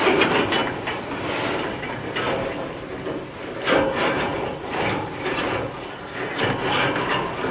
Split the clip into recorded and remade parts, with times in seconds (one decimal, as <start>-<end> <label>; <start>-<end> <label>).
0.0-7.5 recorded